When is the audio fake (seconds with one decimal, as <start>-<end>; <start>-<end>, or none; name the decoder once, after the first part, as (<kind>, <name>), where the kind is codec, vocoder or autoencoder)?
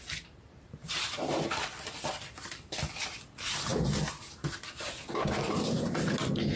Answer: 0.8-1.4 (vocoder, BigVGAN v2)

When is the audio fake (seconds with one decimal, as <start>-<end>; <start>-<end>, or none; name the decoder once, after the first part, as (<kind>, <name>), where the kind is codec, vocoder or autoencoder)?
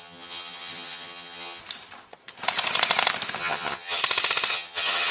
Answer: 0.0-1.6 (vocoder, HiFi-GAN); 3.4-4.0; 4.5-5.1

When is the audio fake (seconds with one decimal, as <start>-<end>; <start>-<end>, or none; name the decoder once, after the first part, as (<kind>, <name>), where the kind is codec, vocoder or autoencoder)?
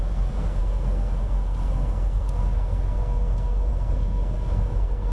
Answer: 0.0-5.1 (codec, SNAC)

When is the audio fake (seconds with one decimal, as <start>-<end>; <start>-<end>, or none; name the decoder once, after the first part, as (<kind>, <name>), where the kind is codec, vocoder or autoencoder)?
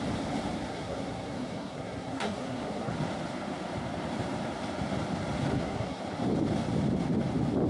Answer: 0.7-2.9 (codec, SNAC); 5.5-6.0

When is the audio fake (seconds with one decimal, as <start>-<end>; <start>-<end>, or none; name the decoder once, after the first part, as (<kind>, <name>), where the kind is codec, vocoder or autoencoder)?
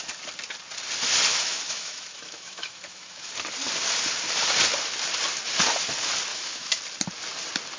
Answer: 1.3-3.3 (autoencoder, DAC-VAE); 6.3-6.8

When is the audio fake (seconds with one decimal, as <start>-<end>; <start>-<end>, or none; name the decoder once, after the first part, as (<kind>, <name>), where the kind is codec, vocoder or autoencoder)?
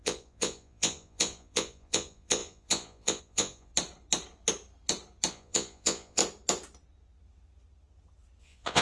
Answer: 0.0-3.7 (vocoder, Vocos); 5.3-6.2; 8.4-8.8